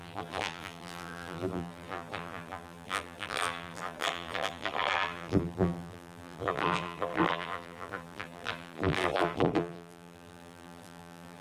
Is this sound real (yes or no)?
no